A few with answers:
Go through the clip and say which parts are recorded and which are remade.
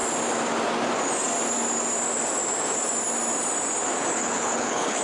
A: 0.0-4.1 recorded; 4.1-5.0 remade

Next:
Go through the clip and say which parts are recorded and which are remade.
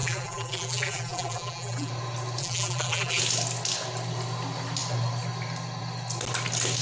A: 0.0-1.9 remade; 1.9-2.4 recorded; 2.4-3.2 remade; 3.2-6.8 recorded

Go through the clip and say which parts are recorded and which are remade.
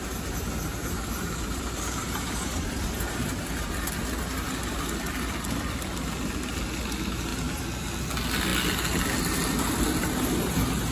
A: 0.0-3.3 remade; 3.3-10.9 recorded